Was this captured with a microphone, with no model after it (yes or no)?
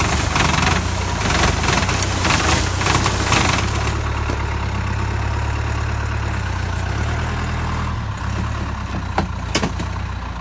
yes